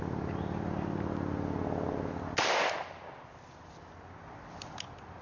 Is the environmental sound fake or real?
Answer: real